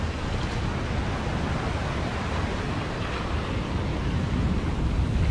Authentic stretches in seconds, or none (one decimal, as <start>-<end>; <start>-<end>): 0.0-3.9; 4.5-5.3